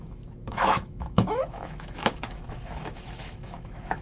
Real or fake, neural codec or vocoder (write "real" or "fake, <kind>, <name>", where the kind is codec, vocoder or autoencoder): fake, autoencoder, DAC-VAE